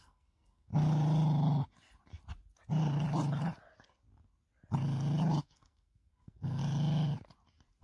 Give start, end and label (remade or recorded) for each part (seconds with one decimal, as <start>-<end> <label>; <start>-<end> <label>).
0.0-0.7 remade; 0.7-5.4 recorded; 5.4-6.6 remade; 6.6-7.8 recorded